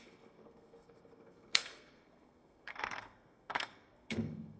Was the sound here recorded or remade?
remade